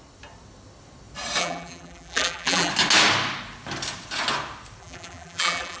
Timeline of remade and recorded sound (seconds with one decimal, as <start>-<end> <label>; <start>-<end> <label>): 0.0-1.4 recorded; 1.4-2.7 remade; 2.7-4.8 recorded; 4.8-5.8 remade